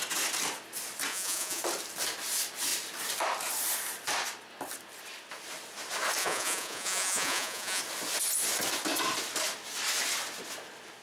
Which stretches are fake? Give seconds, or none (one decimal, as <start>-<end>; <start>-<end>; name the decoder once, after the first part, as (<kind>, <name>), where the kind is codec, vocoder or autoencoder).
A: 1.1-1.6 (vocoder, Vocos); 6.2-7.8